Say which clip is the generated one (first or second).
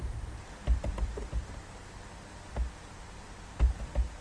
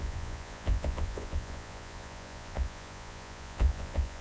second